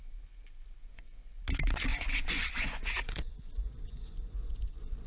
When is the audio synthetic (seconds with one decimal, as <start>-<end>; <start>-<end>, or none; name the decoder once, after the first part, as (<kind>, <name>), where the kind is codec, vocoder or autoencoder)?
0.8-1.4 (vocoder, Vocos); 1.9-5.1